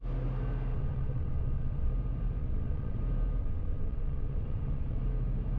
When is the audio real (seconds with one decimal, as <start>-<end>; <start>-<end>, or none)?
0.0-0.7; 1.9-2.4; 3.0-3.4; 5.0-5.6